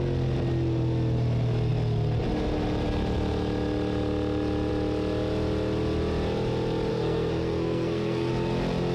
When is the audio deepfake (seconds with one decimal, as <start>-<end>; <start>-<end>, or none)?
6.9-8.3

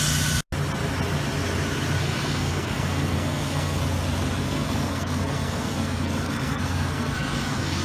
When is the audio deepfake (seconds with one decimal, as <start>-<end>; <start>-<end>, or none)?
2.0-3.8; 4.4-7.8